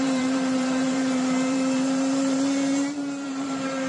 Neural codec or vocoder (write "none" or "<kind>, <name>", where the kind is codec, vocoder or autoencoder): vocoder, BigVGAN v2